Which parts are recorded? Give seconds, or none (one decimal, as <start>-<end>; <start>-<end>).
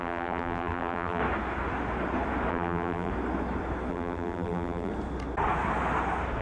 1.2-2.5; 3.1-3.9; 4.9-6.4